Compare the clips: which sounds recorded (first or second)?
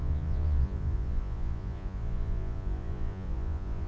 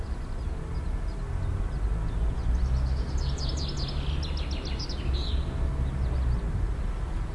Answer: second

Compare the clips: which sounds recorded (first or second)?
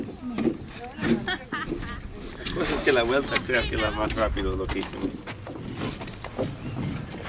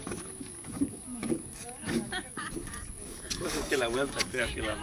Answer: first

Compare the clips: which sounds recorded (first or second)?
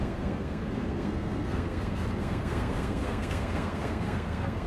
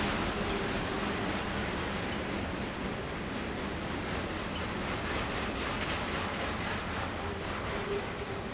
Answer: second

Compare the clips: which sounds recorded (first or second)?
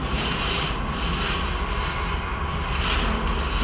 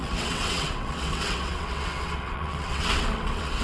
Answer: first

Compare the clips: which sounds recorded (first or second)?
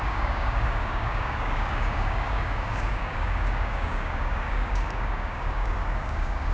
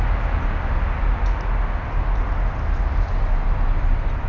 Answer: second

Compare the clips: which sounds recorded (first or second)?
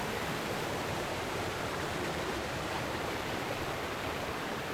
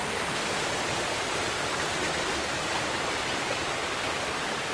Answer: second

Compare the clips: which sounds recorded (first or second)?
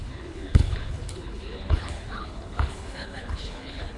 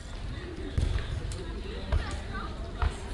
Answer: second